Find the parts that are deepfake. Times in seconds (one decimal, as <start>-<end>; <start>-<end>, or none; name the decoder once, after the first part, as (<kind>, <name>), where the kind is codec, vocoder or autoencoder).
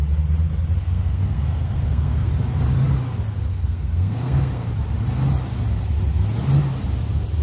0.8-2.3 (codec, SNAC); 3.5-4.7